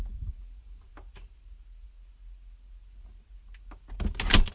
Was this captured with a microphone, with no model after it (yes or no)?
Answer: yes